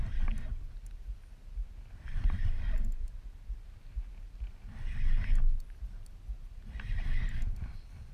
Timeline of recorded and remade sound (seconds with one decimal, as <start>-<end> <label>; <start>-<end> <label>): 0.0-8.1 recorded

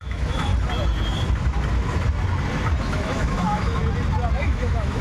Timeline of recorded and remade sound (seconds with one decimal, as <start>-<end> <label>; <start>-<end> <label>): 0.0-0.5 remade; 0.5-2.8 recorded; 2.8-3.8 remade; 3.8-4.4 recorded; 4.4-5.0 remade

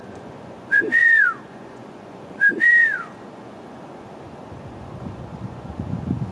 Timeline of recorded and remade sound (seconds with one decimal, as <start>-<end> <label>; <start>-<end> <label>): 0.0-6.3 remade

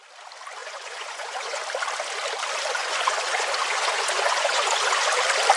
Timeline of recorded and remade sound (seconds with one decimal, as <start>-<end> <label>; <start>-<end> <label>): 0.0-0.6 recorded; 0.6-1.6 remade; 1.6-2.8 recorded; 2.8-5.1 remade; 5.1-5.6 recorded